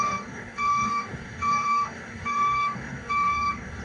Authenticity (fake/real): fake